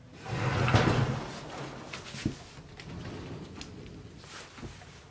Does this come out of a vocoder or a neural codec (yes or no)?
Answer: no